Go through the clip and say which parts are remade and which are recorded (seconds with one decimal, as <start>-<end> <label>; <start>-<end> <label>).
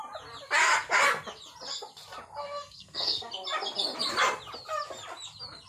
0.0-2.4 recorded; 2.4-3.3 remade; 3.3-5.7 recorded